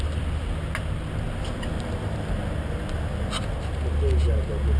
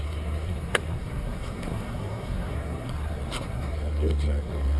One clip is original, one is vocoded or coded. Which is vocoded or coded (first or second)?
second